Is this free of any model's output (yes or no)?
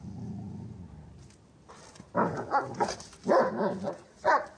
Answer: yes